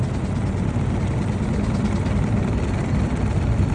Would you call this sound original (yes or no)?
yes